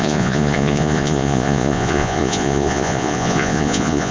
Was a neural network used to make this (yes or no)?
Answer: yes